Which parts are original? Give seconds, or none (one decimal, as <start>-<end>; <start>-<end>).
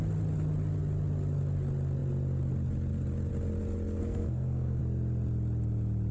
0.0-4.0; 4.8-6.1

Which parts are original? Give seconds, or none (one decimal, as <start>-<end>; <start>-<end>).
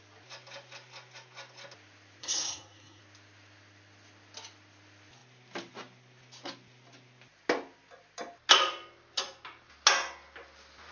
0.0-2.2; 3.0-10.9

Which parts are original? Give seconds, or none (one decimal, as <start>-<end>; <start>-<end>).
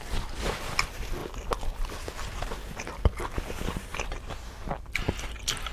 0.0-5.7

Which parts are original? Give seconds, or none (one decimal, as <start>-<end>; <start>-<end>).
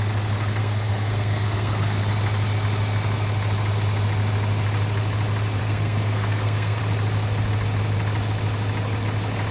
0.0-0.6; 2.0-5.6; 6.8-9.5